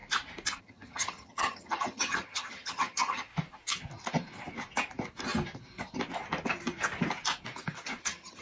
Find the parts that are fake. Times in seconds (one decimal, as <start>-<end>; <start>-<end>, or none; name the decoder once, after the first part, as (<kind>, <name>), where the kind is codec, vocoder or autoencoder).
0.6-3.3 (vocoder, HiFi-GAN); 8.0-8.4